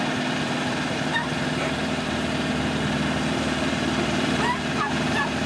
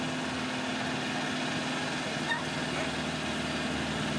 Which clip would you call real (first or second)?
second